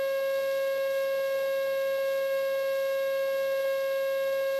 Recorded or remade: recorded